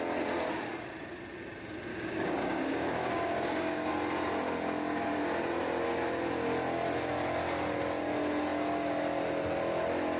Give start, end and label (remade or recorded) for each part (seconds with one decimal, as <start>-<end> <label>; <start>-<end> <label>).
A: 0.0-1.9 recorded; 1.9-3.9 remade; 3.9-10.2 recorded